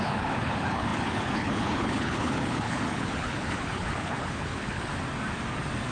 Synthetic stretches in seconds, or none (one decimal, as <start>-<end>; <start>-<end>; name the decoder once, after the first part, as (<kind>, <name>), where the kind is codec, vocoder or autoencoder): 0.0-4.9 (codec, HILCodec)